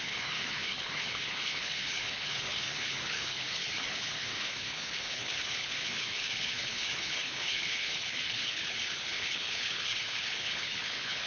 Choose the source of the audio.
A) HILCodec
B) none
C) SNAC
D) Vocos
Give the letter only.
A